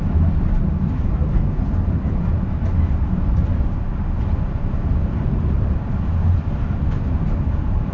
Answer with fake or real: real